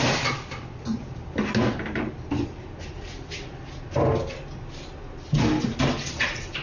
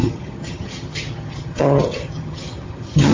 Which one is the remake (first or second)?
second